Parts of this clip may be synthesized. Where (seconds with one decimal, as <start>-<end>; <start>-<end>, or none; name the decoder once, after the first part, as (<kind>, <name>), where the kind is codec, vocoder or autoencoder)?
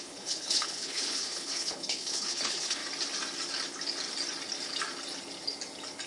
0.0-2.8 (codec, HILCodec)